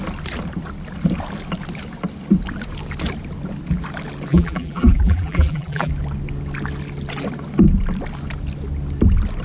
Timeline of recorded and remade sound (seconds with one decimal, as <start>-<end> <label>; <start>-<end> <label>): 0.0-4.3 recorded; 4.3-5.9 remade; 5.9-9.4 recorded